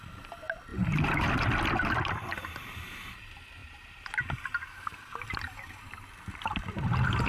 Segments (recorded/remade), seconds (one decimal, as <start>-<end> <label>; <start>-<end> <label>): 0.0-0.7 recorded; 0.7-1.3 remade; 1.3-3.6 recorded; 3.6-5.9 remade; 5.9-7.3 recorded